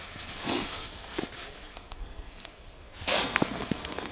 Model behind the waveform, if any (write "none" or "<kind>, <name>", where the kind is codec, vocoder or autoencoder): codec, SNAC